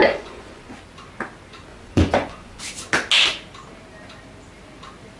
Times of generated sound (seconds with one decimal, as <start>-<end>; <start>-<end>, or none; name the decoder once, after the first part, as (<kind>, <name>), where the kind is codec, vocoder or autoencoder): 0.0-0.7 (vocoder, Vocos); 1.7-2.6